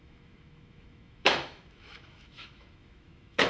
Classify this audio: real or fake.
fake